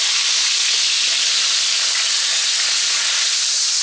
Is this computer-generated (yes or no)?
no